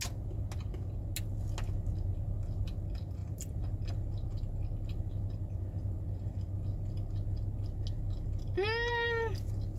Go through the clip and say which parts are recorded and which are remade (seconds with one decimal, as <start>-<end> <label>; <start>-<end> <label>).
0.0-9.8 recorded